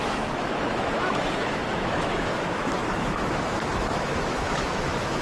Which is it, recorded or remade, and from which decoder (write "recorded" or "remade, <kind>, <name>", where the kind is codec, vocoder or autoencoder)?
remade, autoencoder, DAC-VAE